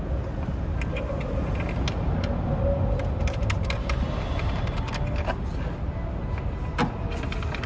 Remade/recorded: recorded